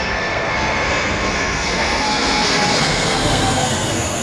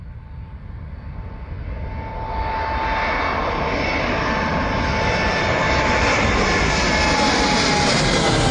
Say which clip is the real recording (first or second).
second